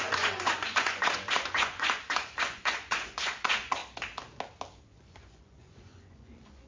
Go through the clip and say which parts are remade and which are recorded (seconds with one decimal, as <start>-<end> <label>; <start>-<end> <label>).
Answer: 0.0-3.8 remade; 3.8-4.8 recorded; 4.8-6.7 remade